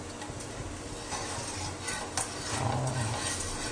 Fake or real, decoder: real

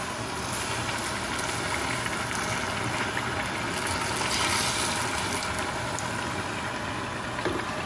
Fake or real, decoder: real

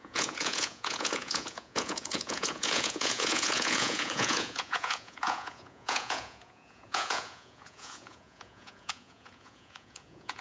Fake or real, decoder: fake, vocoder, Vocos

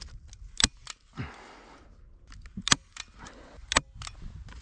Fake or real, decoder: real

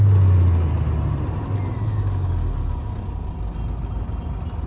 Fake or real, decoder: real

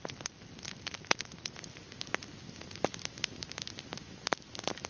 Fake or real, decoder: real